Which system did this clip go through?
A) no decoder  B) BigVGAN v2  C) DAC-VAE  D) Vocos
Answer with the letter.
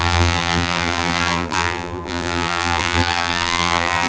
B